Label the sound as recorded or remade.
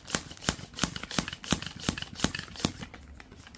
recorded